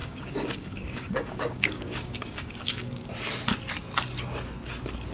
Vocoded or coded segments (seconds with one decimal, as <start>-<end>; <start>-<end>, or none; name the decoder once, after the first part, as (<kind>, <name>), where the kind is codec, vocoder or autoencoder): 0.0-3.1 (codec, DAC)